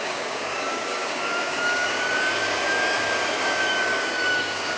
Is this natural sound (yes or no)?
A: no